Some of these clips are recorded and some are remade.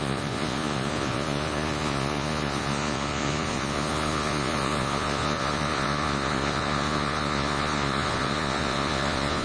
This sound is remade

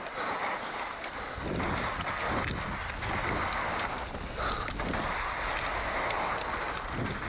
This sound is recorded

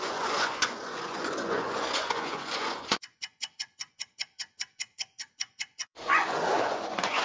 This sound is remade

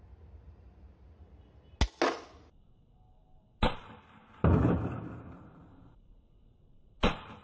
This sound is recorded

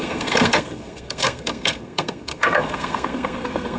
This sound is remade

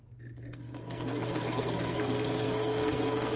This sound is remade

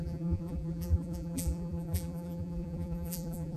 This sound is remade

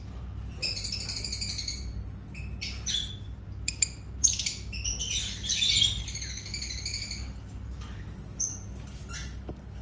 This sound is recorded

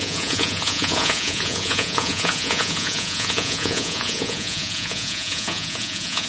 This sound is remade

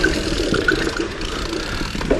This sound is recorded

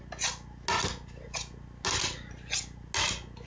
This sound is recorded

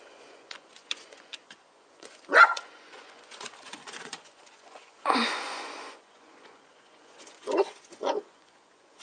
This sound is remade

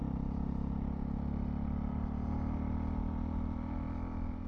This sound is recorded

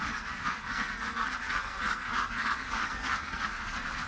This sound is remade